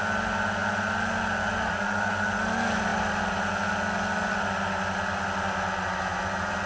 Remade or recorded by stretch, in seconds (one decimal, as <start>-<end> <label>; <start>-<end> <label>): 0.0-6.7 recorded